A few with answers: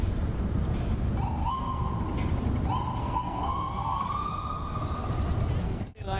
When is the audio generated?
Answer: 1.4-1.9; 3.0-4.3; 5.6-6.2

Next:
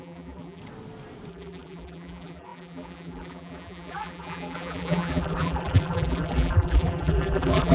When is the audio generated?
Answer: 0.0-0.6; 1.3-7.7

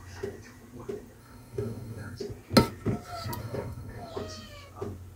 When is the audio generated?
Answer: 1.2-2.2; 3.4-4.1